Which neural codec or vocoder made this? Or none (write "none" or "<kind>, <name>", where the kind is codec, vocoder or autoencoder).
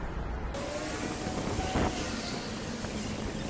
none